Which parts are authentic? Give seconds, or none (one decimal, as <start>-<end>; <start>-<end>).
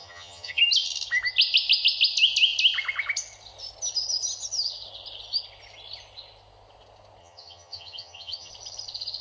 0.6-7.2; 8.5-9.2